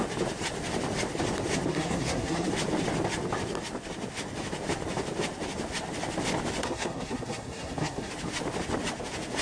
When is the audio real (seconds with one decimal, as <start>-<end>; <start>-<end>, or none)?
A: 0.0-1.7; 2.5-6.6; 8.1-9.4